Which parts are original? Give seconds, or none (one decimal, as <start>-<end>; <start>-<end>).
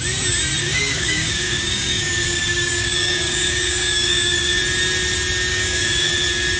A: 0.0-0.6; 4.6-5.5; 6.1-6.6